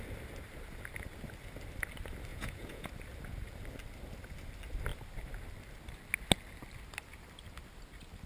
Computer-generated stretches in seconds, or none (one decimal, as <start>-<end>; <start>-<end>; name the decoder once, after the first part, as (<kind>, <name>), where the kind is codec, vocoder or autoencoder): 2.3-2.9 (vocoder, Vocos)